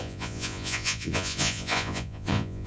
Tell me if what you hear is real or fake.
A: fake